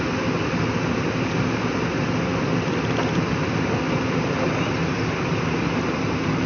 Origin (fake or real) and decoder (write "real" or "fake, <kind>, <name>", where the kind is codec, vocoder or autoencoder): real